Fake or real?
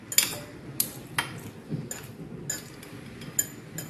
real